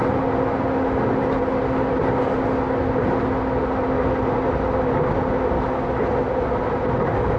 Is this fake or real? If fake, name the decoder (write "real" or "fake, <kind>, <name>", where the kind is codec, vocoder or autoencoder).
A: real